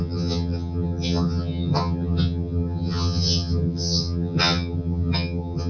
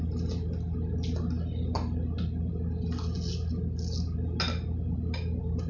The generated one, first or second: first